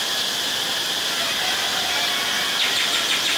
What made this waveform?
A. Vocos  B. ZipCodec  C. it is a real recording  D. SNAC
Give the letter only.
C